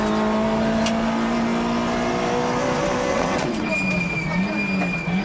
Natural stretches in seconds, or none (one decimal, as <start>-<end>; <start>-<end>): 0.0-3.1; 3.7-5.2